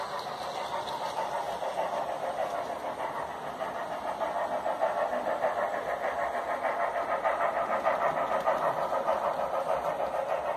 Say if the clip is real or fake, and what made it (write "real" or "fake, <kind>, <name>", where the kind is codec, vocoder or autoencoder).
real